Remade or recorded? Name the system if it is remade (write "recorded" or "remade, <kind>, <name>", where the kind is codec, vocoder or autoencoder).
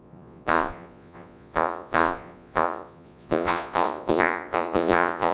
remade, vocoder, Vocos